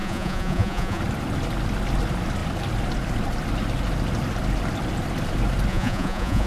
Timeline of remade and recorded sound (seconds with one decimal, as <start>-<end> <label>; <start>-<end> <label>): 0.0-1.0 remade; 1.0-5.7 recorded; 5.7-6.5 remade